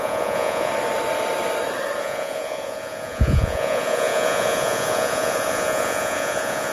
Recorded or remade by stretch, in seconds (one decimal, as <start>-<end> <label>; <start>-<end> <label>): 0.0-0.7 remade; 0.7-2.0 recorded; 2.0-6.7 remade